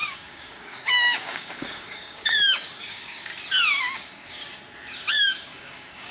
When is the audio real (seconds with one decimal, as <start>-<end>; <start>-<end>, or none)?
3.3-3.8; 4.4-5.1